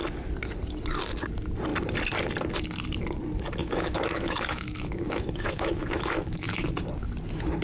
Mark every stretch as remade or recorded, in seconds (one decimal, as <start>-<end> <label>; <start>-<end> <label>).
0.0-3.6 recorded; 3.6-6.8 remade; 6.8-7.6 recorded